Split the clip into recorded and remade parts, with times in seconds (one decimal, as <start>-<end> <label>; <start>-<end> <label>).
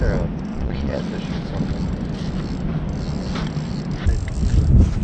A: 0.0-0.5 recorded; 0.5-1.0 remade; 1.0-5.0 recorded